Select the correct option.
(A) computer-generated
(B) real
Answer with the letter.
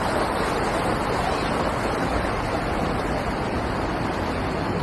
B